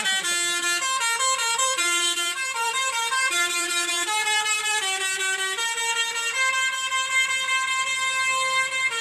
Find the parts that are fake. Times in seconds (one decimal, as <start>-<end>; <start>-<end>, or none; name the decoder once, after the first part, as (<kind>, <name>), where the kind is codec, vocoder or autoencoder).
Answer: 1.4-4.8 (vocoder, BigVGAN v2)